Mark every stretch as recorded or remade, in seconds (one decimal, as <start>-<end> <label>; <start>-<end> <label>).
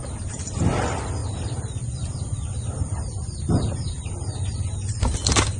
0.0-5.6 recorded